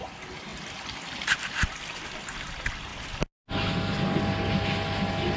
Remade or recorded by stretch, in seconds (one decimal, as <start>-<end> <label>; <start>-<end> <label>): 0.0-5.4 recorded